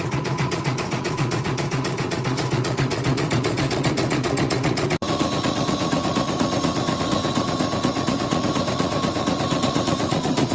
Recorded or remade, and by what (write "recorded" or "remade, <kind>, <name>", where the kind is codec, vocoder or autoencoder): remade, vocoder, Vocos